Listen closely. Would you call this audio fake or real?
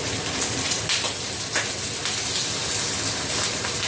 real